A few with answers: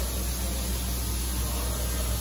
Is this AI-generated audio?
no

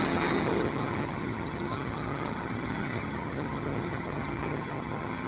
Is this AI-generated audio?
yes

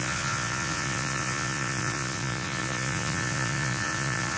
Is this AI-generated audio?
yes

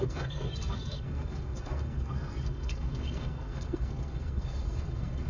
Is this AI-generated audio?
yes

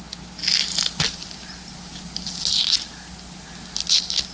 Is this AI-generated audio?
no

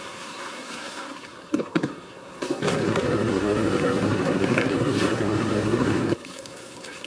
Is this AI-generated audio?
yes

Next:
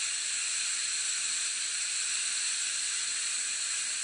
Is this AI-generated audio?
no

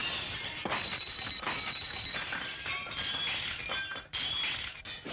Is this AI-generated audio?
no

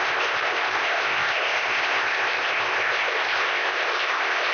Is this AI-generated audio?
yes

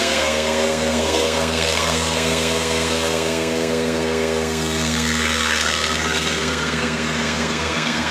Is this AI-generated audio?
yes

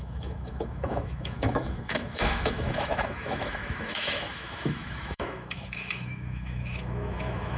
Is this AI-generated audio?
yes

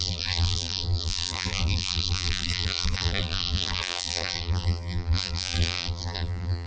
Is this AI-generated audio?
yes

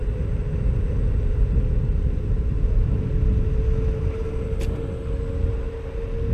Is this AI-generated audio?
no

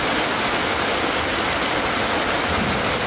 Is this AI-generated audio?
no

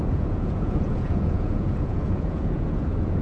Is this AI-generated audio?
yes